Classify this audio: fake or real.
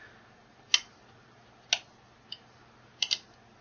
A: real